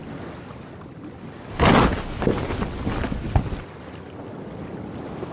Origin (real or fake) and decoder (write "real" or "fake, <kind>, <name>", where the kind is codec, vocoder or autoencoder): real